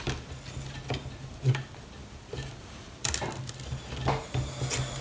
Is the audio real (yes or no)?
yes